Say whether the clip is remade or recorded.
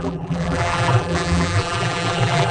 remade